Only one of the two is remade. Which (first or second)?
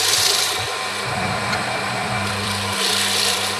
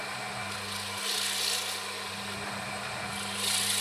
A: first